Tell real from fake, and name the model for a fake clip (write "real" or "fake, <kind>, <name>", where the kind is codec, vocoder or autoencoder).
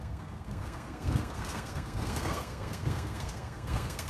fake, codec, SNAC